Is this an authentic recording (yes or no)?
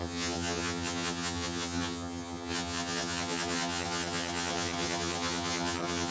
no